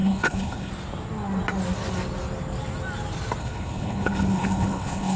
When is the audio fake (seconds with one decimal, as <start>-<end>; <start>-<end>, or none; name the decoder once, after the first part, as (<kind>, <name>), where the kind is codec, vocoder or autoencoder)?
0.0-0.7 (codec, HILCodec); 3.4-5.2

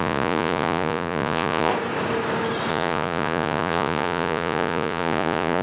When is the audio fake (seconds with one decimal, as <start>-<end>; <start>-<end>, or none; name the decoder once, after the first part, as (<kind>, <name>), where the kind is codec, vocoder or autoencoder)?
0.0-1.7 (vocoder, Vocos); 2.7-5.6